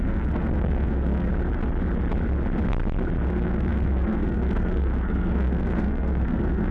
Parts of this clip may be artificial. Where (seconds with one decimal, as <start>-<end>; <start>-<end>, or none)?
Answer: 0.0-1.3; 3.3-6.7